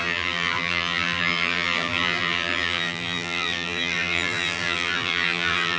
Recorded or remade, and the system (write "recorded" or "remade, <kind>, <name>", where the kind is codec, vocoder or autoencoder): remade, vocoder, BigVGAN v2